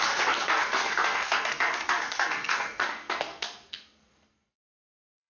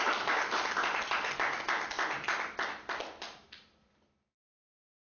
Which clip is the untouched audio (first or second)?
second